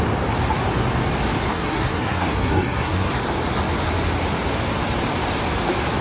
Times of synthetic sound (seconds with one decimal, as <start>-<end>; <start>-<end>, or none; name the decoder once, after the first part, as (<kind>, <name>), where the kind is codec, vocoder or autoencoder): 1.5-3.1 (codec, SNAC)